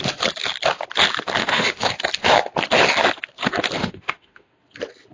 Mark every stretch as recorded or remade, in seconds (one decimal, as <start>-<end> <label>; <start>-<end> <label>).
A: 0.0-1.4 recorded; 1.4-1.9 remade; 1.9-3.8 recorded; 3.8-4.5 remade; 4.5-5.1 recorded